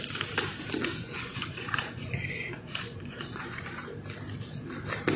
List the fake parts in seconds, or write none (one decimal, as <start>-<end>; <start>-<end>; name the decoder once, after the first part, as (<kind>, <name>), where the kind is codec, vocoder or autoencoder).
0.8-3.9 (vocoder, Vocos)